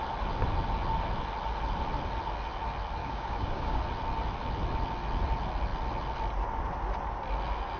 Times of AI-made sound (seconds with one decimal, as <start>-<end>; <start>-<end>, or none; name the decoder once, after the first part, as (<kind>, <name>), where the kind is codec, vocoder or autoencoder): 3.0-3.8 (codec, DAC)